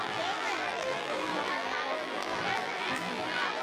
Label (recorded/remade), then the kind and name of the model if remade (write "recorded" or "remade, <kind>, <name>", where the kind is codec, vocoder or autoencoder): remade, vocoder, BigVGAN v2